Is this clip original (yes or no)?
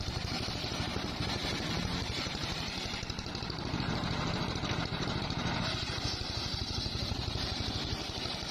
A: no